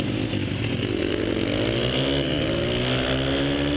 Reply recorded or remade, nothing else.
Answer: recorded